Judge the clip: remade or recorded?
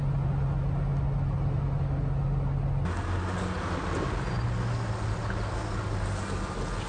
recorded